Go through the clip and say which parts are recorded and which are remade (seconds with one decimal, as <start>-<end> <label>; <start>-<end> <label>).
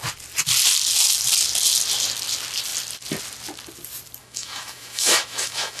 0.0-4.2 recorded; 4.2-5.8 remade